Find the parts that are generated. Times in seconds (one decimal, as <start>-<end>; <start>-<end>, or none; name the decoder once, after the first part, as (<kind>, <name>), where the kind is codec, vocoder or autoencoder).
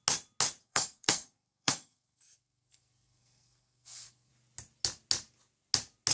0.6-4.3 (codec, SNAC)